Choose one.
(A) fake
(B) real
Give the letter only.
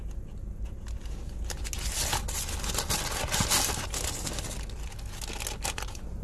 B